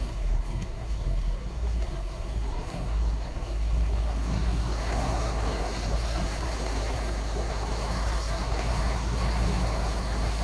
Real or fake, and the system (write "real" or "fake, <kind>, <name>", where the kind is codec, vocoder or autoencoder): fake, codec, SNAC